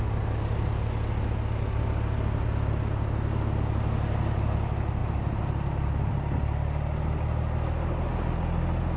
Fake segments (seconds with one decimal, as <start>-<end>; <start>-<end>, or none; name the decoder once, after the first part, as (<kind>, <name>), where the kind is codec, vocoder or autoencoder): none